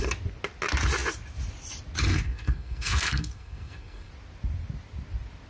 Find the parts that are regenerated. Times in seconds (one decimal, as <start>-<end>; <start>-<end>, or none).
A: 2.1-4.1